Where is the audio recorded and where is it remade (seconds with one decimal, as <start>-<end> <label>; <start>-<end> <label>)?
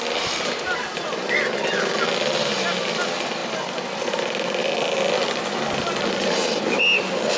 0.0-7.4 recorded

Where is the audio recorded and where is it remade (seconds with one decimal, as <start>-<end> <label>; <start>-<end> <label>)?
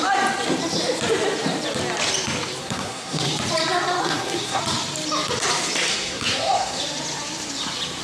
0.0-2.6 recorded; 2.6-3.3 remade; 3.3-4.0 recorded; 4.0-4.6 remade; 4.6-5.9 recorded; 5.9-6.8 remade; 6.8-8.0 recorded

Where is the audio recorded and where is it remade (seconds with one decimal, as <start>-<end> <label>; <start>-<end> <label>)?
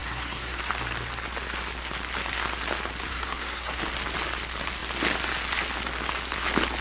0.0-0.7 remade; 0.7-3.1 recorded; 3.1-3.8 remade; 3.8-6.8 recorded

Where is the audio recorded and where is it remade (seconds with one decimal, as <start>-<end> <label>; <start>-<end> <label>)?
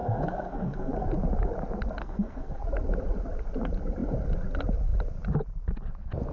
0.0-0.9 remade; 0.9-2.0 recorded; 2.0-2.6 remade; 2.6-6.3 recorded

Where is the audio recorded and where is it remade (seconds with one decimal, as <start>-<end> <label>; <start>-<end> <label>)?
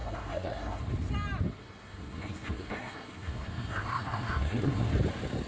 0.0-0.9 remade; 0.9-1.6 recorded; 1.6-4.9 remade; 4.9-5.5 recorded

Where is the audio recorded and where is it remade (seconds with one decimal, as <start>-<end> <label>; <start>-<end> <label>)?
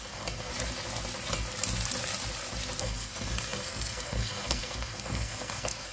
0.0-0.5 remade; 0.5-2.8 recorded; 2.8-5.9 remade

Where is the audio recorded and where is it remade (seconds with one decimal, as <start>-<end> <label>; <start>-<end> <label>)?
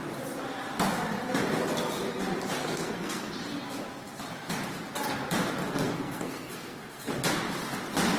0.0-2.6 recorded; 2.6-3.3 remade; 3.3-5.6 recorded; 5.6-7.1 remade; 7.1-8.2 recorded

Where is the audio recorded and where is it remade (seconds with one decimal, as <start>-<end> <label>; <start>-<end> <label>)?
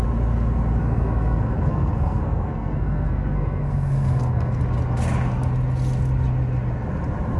0.0-0.8 recorded; 0.8-4.6 remade; 4.6-7.4 recorded